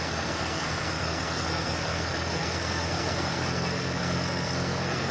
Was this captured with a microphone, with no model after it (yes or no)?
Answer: no